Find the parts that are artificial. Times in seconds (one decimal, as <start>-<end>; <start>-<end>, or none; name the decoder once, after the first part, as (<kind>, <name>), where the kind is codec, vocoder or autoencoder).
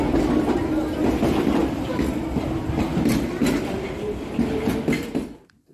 none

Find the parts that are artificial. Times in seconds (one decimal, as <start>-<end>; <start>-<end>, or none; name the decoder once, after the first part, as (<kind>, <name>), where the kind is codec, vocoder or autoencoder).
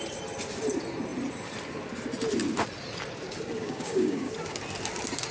3.6-4.3 (codec, DAC)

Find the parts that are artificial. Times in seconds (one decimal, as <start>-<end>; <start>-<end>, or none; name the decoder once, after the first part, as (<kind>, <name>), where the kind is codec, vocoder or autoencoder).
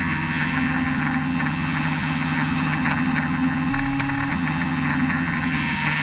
0.0-3.7 (vocoder, HiFi-GAN); 4.3-6.0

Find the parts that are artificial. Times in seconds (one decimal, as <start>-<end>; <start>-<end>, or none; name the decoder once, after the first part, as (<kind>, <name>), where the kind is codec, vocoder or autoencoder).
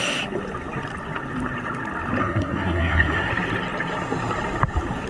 2.2-3.3 (codec, SNAC)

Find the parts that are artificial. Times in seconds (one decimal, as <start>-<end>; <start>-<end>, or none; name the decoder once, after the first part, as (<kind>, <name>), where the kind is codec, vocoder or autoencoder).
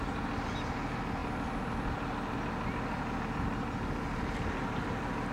none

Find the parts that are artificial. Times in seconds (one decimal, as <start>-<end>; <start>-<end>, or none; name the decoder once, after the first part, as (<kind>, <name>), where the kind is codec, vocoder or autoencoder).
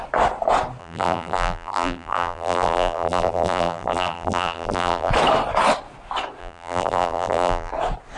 0.8-5.1 (vocoder, BigVGAN v2); 6.4-7.7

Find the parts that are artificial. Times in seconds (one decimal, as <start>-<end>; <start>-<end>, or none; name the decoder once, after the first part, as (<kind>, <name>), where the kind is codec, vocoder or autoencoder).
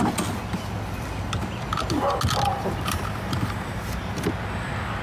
2.5-4.3 (vocoder, BigVGAN v2)